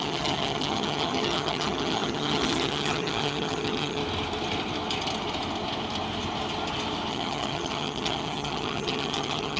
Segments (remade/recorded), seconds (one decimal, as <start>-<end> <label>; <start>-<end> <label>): 0.0-4.0 remade; 4.0-7.1 recorded; 7.1-9.6 remade